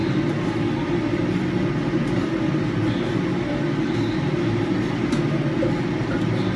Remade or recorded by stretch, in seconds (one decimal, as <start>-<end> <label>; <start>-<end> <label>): 0.0-6.6 recorded